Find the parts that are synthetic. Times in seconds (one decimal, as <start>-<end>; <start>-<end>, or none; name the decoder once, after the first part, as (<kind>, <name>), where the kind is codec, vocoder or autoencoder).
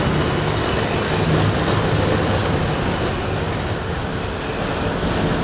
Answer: none